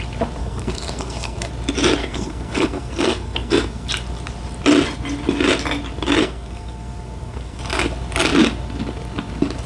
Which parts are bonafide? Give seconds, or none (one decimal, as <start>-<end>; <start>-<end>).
0.0-0.4; 1.5-2.0; 3.9-6.2; 7.6-9.7